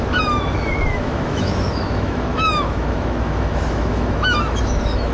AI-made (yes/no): yes